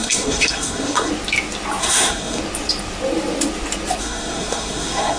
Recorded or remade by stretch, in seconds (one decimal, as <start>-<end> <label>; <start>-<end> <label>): 0.0-1.1 remade; 1.1-1.8 recorded; 1.8-2.4 remade; 2.4-4.0 recorded; 4.0-5.2 remade